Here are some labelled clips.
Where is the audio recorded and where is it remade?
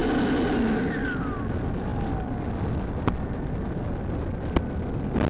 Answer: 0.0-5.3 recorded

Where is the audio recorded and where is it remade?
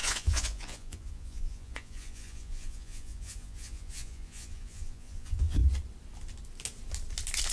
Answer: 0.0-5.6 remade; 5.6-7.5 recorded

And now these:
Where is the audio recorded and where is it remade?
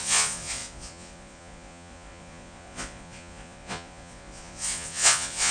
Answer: 0.0-5.5 remade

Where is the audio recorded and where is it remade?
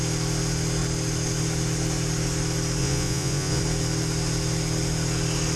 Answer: 0.0-2.8 recorded; 2.8-3.6 remade; 3.6-5.6 recorded